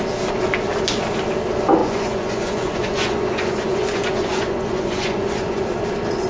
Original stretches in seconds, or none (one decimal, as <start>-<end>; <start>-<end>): 0.0-1.8; 5.6-6.3